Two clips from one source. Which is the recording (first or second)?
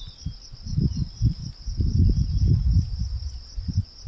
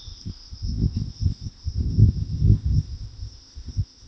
first